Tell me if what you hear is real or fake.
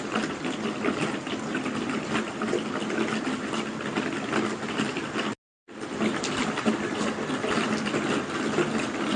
real